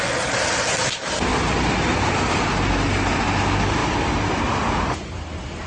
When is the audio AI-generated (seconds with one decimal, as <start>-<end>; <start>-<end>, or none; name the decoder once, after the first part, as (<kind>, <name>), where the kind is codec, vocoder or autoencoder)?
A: 1.3-2.5 (vocoder, BigVGAN v2); 3.8-4.4